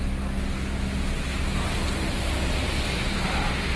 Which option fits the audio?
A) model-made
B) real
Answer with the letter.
B